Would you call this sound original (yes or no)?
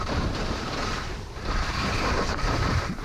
no